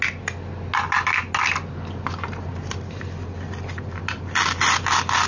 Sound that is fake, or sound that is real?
real